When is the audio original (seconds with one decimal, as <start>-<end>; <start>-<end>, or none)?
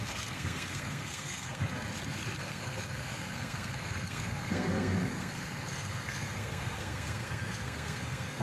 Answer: 1.6-2.4